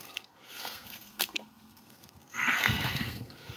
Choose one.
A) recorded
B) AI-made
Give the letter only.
B